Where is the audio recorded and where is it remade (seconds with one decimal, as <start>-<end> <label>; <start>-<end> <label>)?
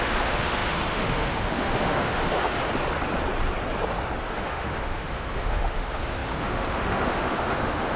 0.0-2.6 remade; 2.6-4.3 recorded; 4.3-8.0 remade